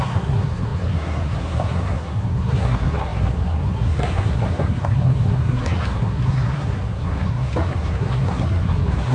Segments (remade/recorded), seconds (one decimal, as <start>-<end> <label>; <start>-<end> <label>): 0.0-9.1 remade